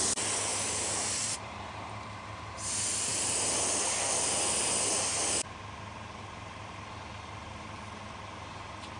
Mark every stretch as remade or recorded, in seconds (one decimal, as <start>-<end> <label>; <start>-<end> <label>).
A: 0.0-0.5 recorded; 0.5-2.7 remade; 2.7-9.0 recorded